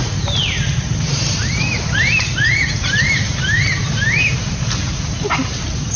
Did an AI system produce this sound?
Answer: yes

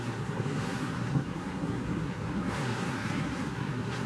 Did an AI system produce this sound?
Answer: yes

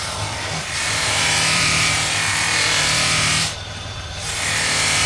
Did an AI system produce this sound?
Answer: yes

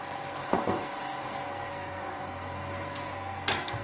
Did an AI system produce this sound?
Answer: yes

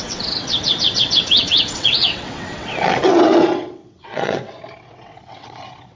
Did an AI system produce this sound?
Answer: yes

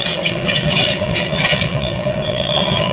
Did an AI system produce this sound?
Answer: yes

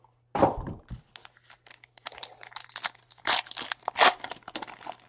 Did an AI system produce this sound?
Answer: no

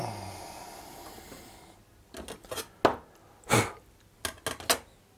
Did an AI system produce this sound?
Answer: no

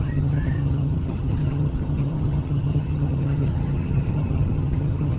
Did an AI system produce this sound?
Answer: yes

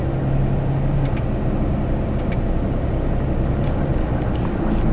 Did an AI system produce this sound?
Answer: no